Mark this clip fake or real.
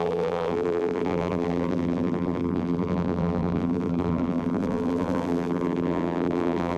fake